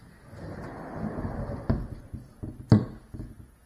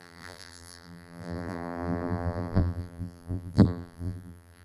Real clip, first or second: first